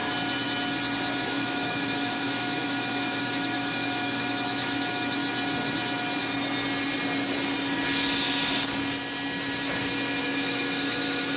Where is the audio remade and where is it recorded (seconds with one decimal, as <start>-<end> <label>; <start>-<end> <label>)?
0.0-1.2 recorded; 1.2-5.2 remade; 5.2-10.2 recorded; 10.2-11.4 remade